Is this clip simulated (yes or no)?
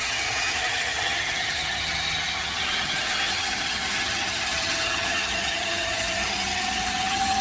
yes